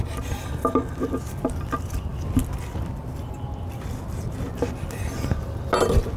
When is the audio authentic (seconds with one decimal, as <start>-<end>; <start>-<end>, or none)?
0.0-6.2